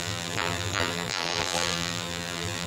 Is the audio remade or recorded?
remade